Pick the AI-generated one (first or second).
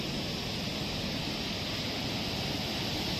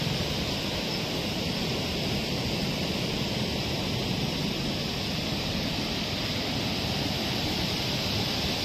second